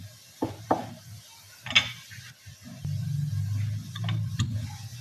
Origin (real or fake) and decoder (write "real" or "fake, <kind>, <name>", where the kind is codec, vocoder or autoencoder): real